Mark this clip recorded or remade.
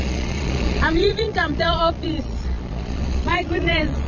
remade